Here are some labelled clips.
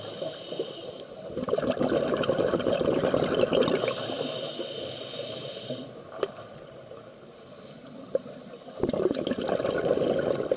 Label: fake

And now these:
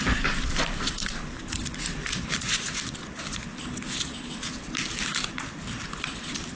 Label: fake